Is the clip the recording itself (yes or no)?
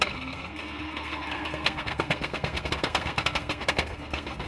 no